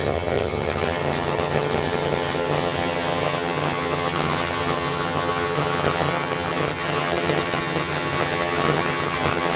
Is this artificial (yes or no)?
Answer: yes